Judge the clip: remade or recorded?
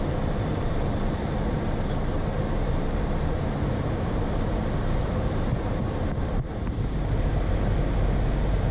remade